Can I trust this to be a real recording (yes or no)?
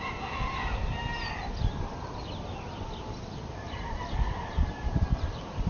yes